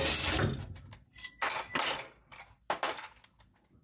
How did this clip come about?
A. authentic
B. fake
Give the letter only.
A